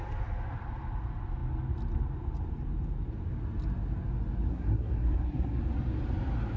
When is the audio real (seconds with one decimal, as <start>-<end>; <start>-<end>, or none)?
0.0-4.5; 5.6-6.6